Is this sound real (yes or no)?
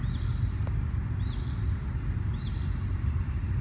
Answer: yes